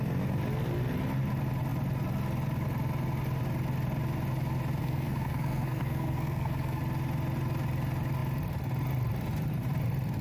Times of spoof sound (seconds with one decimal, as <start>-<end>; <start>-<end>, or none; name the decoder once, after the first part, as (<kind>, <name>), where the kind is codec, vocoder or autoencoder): 4.8-6.8 (codec, SNAC)